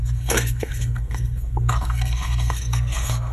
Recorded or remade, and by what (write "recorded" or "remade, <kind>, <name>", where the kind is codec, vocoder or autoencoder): remade, codec, SNAC